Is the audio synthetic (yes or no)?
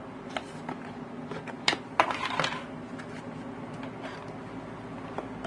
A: no